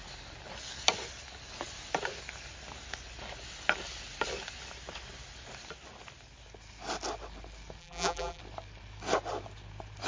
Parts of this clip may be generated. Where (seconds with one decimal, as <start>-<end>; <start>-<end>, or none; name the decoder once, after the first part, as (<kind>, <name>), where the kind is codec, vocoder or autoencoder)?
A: 7.8-8.4 (vocoder, BigVGAN v2)